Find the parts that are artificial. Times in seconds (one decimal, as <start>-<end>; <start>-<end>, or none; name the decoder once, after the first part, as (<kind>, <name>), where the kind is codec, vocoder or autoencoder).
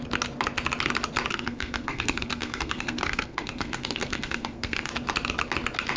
1.3-4.9 (codec, SNAC)